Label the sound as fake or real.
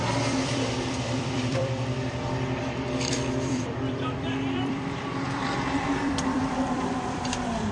fake